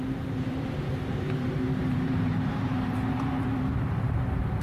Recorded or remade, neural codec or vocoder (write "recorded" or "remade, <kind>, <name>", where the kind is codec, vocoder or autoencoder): remade, vocoder, BigVGAN v2